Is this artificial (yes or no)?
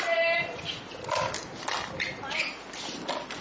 no